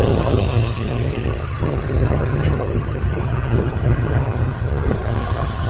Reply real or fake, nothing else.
fake